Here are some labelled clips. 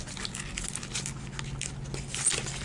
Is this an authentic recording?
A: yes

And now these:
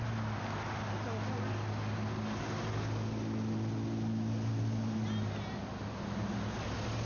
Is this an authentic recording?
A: yes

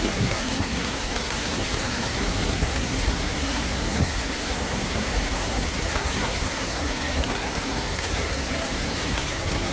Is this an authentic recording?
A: no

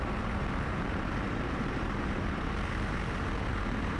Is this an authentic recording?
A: no